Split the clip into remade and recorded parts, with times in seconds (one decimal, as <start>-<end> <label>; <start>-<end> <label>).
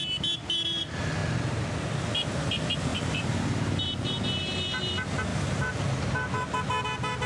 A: 0.0-2.9 recorded; 2.9-4.2 remade; 4.2-5.3 recorded; 5.3-6.0 remade; 6.0-7.3 recorded